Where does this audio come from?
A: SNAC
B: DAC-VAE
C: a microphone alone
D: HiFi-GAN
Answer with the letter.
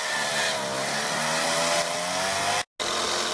C